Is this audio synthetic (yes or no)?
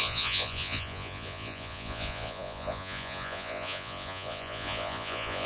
yes